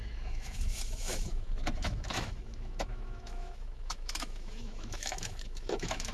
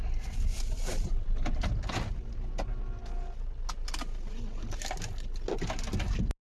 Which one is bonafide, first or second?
second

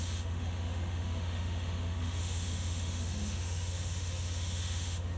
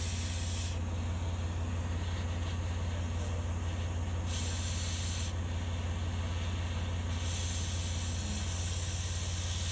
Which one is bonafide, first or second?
second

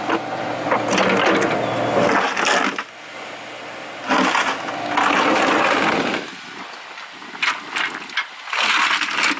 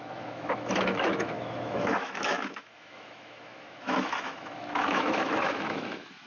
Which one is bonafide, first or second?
first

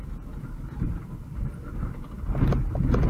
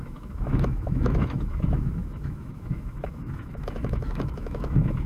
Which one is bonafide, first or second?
first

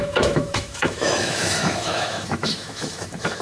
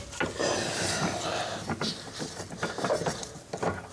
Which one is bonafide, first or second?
second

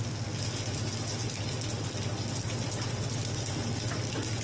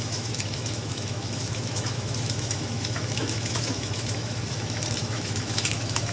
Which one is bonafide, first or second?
first